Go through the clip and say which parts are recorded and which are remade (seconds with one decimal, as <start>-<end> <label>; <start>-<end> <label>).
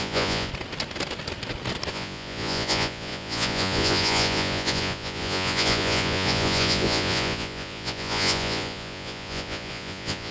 0.0-0.5 remade; 0.5-1.9 recorded; 1.9-10.3 remade